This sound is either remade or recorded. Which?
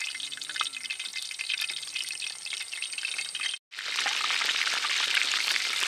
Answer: recorded